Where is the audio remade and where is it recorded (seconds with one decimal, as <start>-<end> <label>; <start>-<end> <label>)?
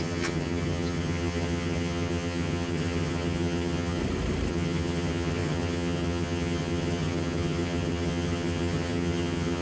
0.0-4.0 remade; 4.0-4.5 recorded; 4.5-9.6 remade